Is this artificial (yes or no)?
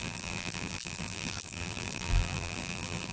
yes